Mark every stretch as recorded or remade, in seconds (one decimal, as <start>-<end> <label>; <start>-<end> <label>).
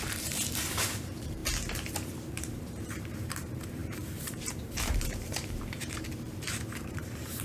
0.0-1.4 remade; 1.4-2.3 recorded; 2.3-7.4 remade